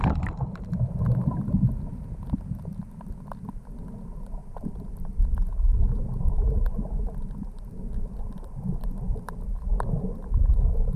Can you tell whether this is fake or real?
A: real